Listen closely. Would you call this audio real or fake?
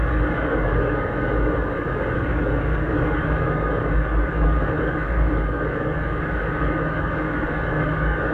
fake